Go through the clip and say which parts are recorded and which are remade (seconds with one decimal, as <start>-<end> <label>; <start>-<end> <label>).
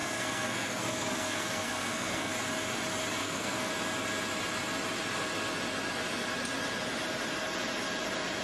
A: 0.0-2.3 remade; 2.3-3.2 recorded; 3.2-3.7 remade; 3.7-8.4 recorded